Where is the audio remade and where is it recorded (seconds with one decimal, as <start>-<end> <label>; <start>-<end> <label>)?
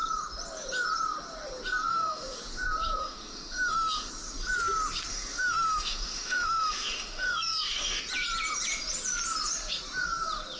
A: 0.0-1.9 recorded; 1.9-2.4 remade; 2.4-3.0 recorded; 3.0-4.1 remade; 4.1-5.1 recorded; 5.1-8.0 remade; 8.0-10.6 recorded